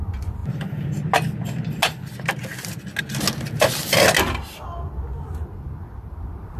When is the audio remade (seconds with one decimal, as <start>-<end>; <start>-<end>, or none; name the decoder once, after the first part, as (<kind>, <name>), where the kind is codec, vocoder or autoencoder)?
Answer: none